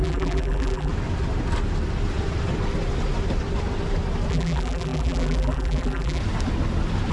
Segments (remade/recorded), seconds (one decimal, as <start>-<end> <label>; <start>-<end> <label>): 0.0-0.9 remade; 0.9-4.3 recorded; 4.3-6.2 remade; 6.2-7.1 recorded